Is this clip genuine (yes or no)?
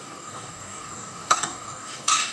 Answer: no